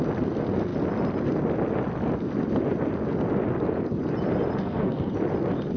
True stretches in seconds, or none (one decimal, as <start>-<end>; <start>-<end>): 0.0-4.6; 5.1-5.8